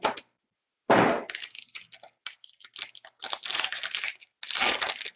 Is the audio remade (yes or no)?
no